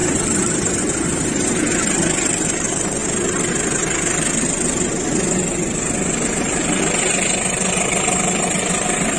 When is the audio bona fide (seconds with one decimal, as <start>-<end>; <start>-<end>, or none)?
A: 0.0-9.2